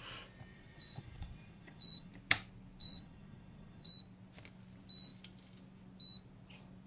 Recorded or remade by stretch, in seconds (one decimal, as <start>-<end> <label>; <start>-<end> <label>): 0.0-0.5 recorded; 0.5-2.1 remade; 2.1-2.8 recorded; 2.8-3.9 remade; 3.9-6.9 recorded

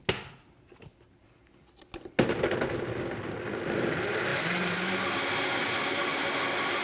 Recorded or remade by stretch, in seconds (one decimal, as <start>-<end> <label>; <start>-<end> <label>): 0.0-6.8 recorded

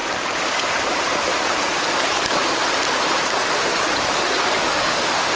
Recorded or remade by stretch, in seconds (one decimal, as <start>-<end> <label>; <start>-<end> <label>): 0.0-4.7 recorded; 4.7-5.4 remade

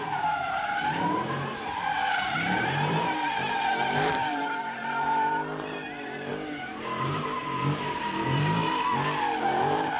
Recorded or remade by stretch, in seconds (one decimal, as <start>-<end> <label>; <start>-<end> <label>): 0.0-8.6 remade; 8.6-9.4 recorded; 9.4-10.0 remade

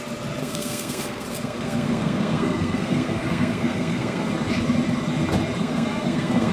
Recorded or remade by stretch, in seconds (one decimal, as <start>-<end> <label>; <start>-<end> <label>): 0.0-0.4 recorded; 0.4-4.3 remade; 4.3-5.6 recorded; 5.6-6.5 remade

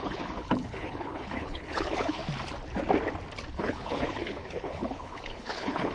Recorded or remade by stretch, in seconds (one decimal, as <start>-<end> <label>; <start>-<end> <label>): 0.0-2.2 remade; 2.2-3.5 recorded; 3.5-5.9 remade

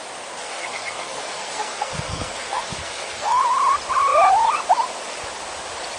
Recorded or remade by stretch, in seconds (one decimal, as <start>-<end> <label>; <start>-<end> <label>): 0.0-0.4 recorded; 0.4-3.4 remade; 3.4-6.0 recorded